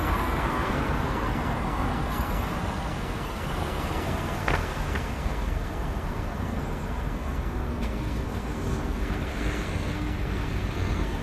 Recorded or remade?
remade